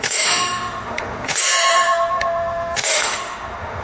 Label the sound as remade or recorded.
remade